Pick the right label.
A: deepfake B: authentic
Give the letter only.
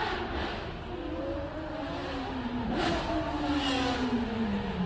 B